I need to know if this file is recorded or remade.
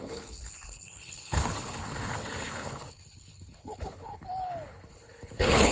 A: remade